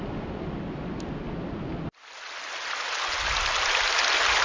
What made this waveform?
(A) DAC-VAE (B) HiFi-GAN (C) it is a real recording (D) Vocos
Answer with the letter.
C